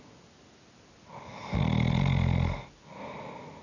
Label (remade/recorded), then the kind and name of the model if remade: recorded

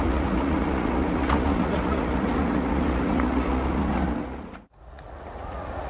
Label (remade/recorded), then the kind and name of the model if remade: remade, vocoder, Vocos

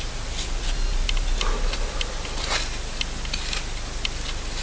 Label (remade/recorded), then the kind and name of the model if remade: recorded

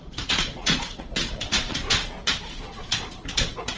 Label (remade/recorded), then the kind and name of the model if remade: remade, vocoder, Vocos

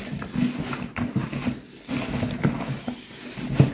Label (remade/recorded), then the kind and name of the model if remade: recorded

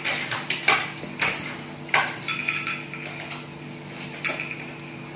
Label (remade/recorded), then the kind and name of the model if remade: recorded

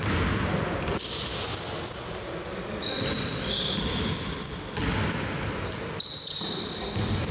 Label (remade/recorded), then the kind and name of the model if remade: recorded